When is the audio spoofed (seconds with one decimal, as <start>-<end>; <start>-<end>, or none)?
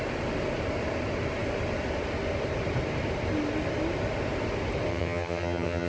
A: 4.9-5.9